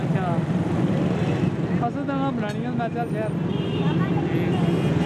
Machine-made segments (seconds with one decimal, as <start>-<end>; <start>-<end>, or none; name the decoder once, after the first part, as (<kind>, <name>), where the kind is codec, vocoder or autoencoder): 3.5-4.1 (vocoder, BigVGAN v2)